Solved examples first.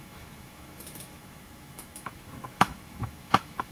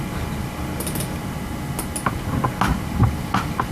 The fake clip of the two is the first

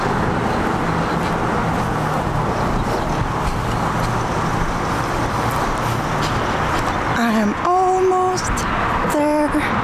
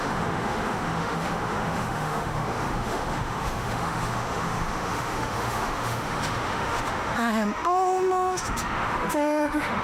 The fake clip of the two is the second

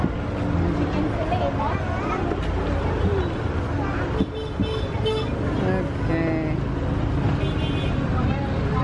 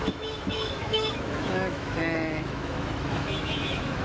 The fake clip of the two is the second